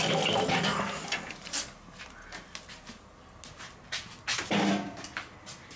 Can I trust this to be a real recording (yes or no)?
yes